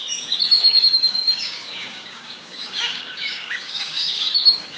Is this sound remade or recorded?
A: remade